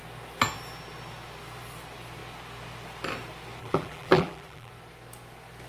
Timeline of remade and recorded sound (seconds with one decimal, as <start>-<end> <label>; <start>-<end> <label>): 0.0-3.6 recorded; 3.6-4.7 remade; 4.7-5.7 recorded

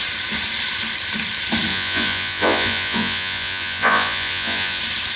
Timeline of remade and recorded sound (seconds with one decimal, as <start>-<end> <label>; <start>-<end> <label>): 0.0-1.7 recorded; 1.7-4.8 remade; 4.8-5.2 recorded

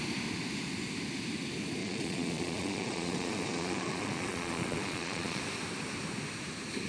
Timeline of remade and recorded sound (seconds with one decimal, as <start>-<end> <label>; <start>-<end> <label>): 0.0-1.8 recorded; 1.8-5.4 remade; 5.4-6.9 recorded

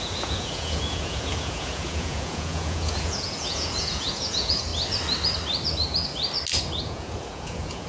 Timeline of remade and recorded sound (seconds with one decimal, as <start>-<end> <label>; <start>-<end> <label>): 0.0-4.7 remade; 4.7-6.8 recorded; 6.8-7.9 remade

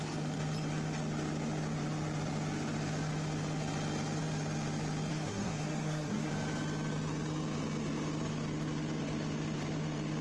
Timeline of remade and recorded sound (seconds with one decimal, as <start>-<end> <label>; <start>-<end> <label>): 0.0-5.1 recorded; 5.1-6.3 remade; 6.3-10.2 recorded

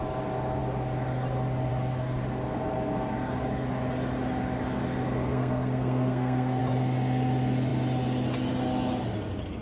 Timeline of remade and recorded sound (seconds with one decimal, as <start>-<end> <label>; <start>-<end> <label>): 0.0-5.3 recorded; 5.3-6.6 remade; 6.6-9.6 recorded